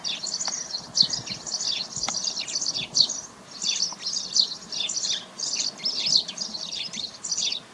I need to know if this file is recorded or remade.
recorded